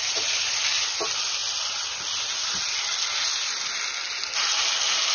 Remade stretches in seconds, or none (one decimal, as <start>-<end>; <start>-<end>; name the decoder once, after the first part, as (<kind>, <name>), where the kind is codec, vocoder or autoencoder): none